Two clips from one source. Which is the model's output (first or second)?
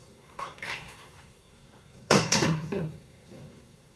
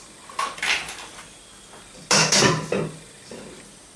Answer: first